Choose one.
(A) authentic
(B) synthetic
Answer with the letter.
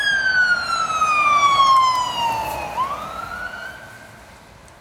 A